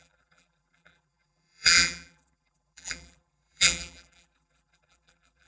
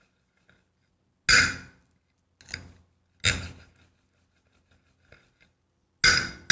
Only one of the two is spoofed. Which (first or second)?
first